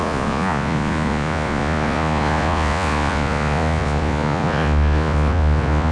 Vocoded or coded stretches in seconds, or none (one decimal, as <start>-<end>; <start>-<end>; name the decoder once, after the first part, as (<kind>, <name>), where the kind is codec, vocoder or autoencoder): 0.0-5.9 (vocoder, Vocos)